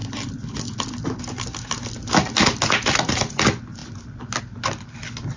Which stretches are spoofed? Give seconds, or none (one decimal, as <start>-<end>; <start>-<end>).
none